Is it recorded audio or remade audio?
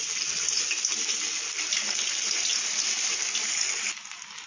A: recorded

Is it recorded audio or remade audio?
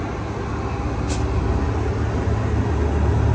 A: recorded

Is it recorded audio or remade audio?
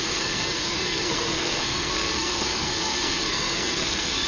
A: remade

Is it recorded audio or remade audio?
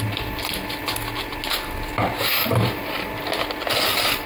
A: recorded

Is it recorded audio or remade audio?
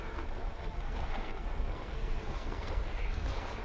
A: remade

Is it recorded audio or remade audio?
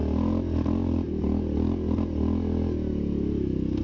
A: recorded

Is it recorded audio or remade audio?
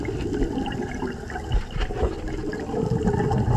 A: recorded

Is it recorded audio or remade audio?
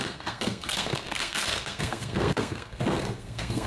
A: remade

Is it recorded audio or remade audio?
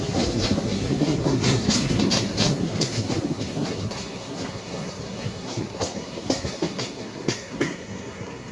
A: remade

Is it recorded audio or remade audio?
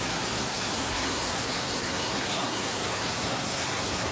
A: remade